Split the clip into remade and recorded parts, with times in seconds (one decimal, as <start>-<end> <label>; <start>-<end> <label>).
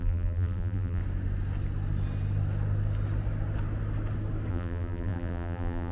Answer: 0.0-1.0 remade; 1.0-4.5 recorded; 4.5-5.9 remade